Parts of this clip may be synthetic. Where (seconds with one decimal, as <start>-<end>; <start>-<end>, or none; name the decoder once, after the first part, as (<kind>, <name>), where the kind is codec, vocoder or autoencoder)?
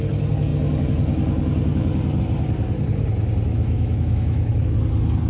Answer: 3.5-4.5 (autoencoder, DAC-VAE)